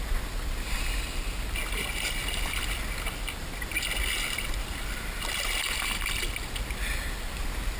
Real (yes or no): yes